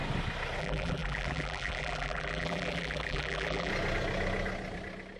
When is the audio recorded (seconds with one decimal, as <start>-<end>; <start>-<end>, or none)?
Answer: 0.0-0.6; 3.7-5.2